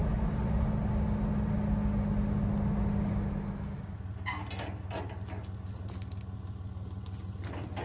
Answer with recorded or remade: recorded